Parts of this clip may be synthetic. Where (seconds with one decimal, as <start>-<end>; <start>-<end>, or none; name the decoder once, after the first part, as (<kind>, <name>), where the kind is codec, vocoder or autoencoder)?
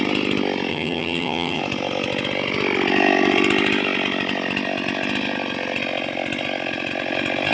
0.7-1.6 (vocoder, HiFi-GAN)